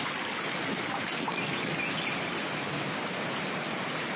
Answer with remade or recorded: recorded